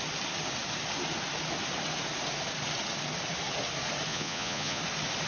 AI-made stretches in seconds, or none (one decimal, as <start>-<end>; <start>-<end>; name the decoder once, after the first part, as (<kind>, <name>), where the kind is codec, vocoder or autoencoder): 4.1-4.8 (vocoder, Vocos)